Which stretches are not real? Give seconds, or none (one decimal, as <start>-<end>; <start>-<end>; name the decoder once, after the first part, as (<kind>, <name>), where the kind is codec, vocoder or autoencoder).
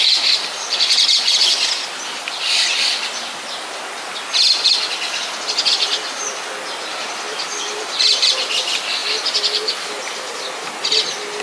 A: 7.7-8.3 (vocoder, BigVGAN v2)